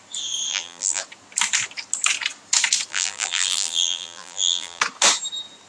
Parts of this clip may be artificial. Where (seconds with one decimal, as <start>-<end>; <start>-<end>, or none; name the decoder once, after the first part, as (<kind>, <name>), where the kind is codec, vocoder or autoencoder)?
0.5-1.0 (vocoder, BigVGAN v2); 2.9-4.8